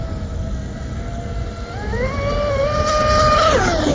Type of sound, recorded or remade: recorded